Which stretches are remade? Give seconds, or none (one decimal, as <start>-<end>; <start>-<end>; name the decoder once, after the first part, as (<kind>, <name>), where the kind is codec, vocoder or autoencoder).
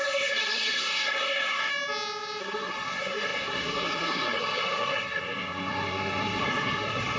0.0-1.7 (codec, SNAC); 2.4-7.2